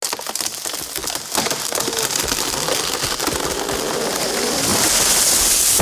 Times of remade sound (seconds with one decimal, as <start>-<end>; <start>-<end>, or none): none